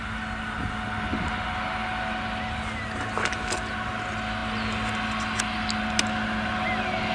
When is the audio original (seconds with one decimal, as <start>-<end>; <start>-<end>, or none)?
0.0-7.1